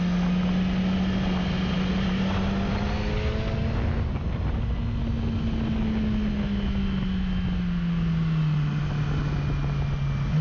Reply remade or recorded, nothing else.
recorded